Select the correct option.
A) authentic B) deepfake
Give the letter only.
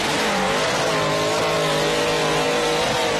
A